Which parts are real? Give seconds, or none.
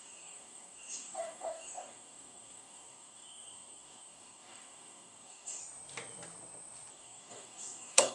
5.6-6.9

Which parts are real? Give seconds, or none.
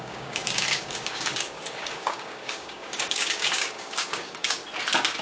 4.6-5.2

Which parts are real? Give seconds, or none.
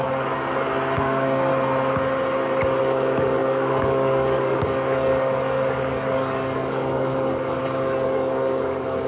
0.4-1.0; 1.5-2.8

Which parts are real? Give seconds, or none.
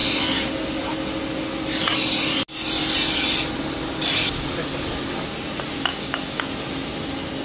0.0-5.9; 6.5-7.4